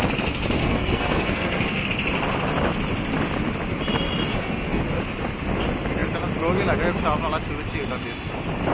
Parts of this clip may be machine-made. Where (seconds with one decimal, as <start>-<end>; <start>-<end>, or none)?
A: 0.6-1.9; 4.3-4.8

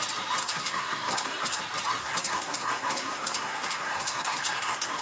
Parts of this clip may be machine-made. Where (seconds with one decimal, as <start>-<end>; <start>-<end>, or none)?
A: 0.4-1.6; 2.0-5.0

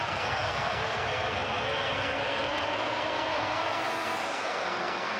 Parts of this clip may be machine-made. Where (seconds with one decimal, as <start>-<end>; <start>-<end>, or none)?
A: 0.0-5.2

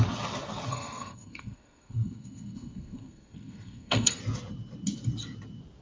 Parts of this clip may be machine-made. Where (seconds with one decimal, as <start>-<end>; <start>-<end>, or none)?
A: 0.7-4.2

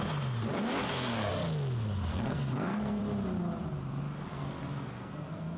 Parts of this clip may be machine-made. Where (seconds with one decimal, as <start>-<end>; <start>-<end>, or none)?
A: 0.8-1.3; 2.1-3.0; 4.3-5.6